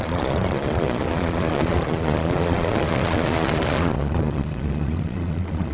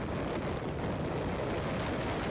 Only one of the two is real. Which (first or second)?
second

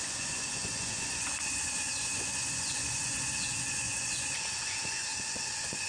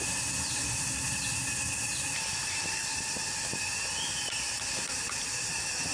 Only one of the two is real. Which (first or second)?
second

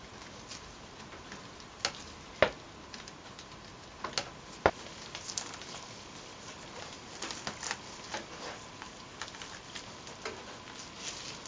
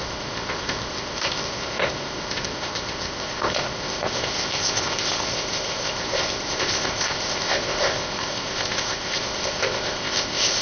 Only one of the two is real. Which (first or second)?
first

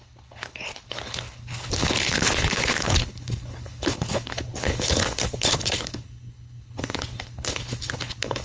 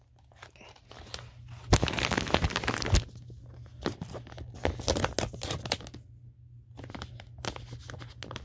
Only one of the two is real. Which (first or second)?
second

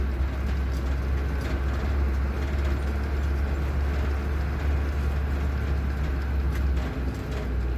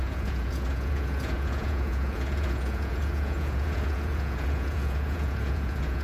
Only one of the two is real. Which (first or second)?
first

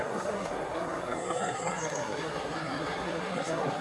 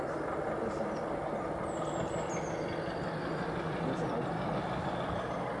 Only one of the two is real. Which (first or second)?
second